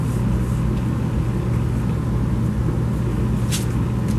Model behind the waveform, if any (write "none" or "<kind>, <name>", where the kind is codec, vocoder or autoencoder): none